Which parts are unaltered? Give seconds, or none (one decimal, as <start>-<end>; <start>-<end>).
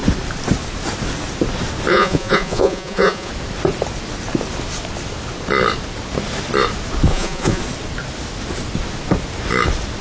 0.0-1.9; 3.3-7.1; 7.6-10.0